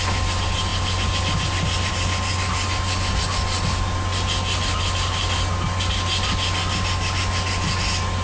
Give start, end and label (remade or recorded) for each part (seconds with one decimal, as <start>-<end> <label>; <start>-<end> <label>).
0.0-8.2 recorded